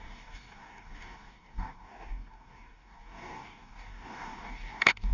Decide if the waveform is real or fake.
fake